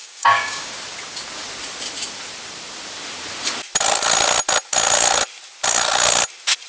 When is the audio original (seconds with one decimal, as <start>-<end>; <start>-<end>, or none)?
0.7-6.7

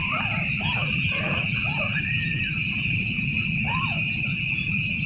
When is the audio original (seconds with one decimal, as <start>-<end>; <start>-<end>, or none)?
0.7-5.1

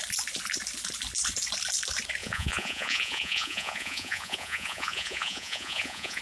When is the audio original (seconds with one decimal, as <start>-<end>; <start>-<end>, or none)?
0.0-2.2

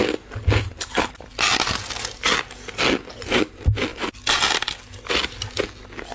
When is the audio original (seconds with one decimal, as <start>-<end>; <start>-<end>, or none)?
0.0-6.1

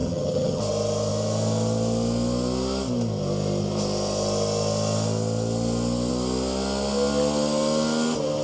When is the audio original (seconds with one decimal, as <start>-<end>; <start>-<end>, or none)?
0.6-8.4

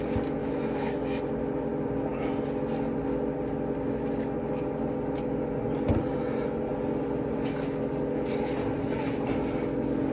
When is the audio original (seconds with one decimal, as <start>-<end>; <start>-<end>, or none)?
0.0-0.4; 1.2-10.1

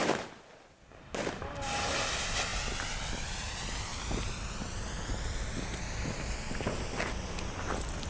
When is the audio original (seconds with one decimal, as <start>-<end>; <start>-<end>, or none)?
0.0-8.1

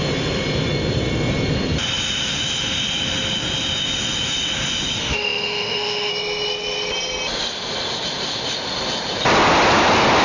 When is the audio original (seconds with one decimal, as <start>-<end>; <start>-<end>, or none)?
0.0-5.0; 6.1-10.2